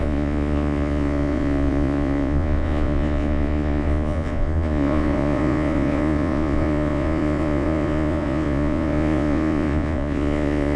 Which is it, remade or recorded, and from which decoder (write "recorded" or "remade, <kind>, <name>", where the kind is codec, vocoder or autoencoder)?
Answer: remade, vocoder, Vocos